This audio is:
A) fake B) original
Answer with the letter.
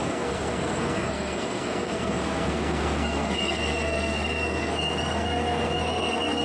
A